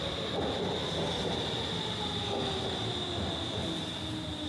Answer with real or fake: real